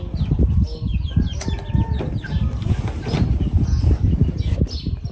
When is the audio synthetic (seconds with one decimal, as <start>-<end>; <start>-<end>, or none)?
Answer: none